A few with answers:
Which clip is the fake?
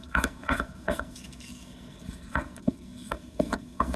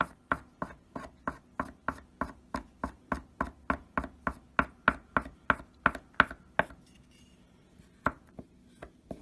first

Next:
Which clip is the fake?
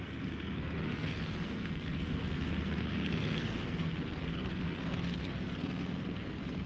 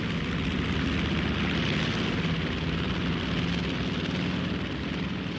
first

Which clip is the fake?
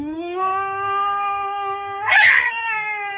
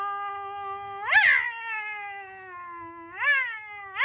first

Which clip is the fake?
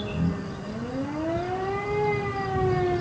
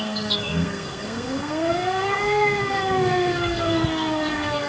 second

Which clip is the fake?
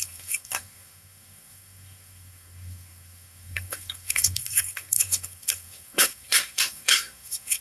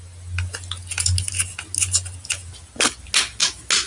first